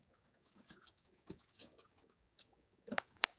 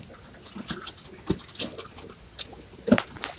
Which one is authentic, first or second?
second